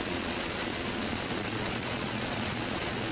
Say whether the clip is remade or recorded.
remade